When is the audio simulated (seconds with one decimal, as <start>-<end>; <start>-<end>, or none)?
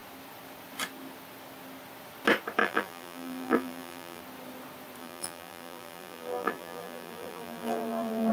2.6-4.2; 5.0-8.3